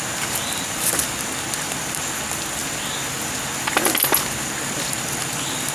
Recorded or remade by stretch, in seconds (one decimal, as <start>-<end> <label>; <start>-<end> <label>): 0.0-5.7 recorded

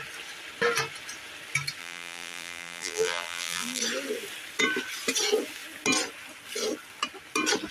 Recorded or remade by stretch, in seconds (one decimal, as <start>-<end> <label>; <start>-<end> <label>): 0.0-1.8 recorded; 1.8-3.8 remade; 3.8-7.7 recorded

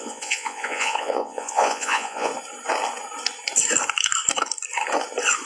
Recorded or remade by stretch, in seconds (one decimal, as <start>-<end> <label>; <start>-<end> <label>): 0.0-2.3 remade; 2.3-5.5 recorded

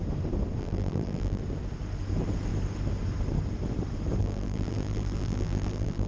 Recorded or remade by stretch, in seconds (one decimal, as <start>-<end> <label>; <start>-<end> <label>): 0.0-0.6 recorded; 0.6-1.4 remade; 1.4-4.2 recorded; 4.2-6.1 remade

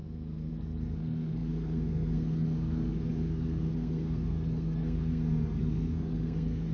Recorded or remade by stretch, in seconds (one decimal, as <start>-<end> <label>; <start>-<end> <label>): 0.0-6.7 remade

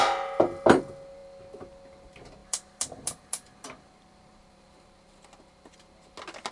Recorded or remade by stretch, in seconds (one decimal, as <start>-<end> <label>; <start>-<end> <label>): 0.0-2.4 recorded; 2.4-5.8 remade; 5.8-6.5 recorded

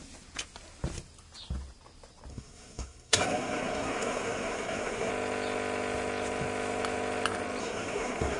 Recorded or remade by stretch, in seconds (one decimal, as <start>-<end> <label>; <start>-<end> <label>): 0.0-2.3 recorded; 2.3-5.1 remade; 5.1-7.6 recorded; 7.6-8.4 remade

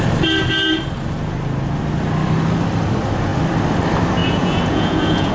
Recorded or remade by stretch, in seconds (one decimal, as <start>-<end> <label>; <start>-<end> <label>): 0.0-4.2 recorded; 4.2-5.3 remade